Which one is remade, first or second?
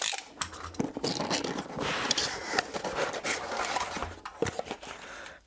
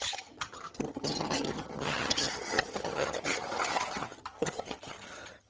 second